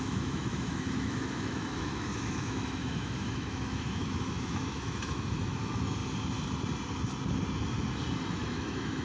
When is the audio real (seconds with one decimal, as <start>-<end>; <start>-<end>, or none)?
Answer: 6.0-8.3

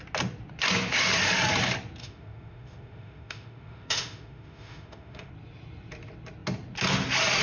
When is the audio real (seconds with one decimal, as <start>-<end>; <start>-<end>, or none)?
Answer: 0.0-2.0; 5.3-7.4